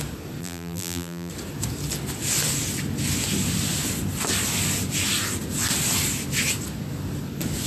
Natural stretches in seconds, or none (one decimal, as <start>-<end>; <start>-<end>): 0.0-0.4; 1.3-7.7